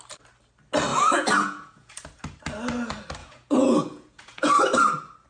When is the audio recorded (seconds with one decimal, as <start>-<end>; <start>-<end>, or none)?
0.0-0.9; 1.9-3.2; 4.5-5.3

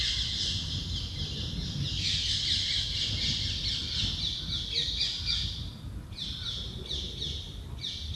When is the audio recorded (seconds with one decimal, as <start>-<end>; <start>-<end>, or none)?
0.0-8.2

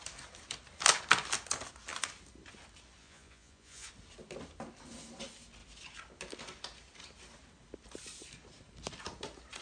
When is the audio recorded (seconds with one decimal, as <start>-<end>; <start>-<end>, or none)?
0.0-3.0; 3.9-9.6